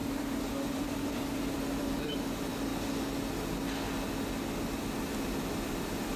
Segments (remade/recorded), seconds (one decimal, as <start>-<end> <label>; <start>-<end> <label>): 0.0-0.5 recorded; 0.5-2.7 remade; 2.7-5.0 recorded; 5.0-6.2 remade